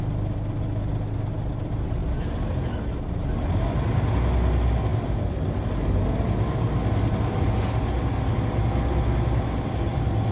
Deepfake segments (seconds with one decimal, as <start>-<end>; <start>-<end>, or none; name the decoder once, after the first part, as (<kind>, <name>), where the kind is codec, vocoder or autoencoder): none

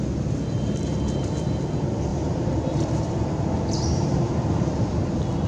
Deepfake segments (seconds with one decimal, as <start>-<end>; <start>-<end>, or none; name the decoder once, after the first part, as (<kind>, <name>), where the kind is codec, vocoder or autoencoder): 2.1-4.3 (vocoder, BigVGAN v2)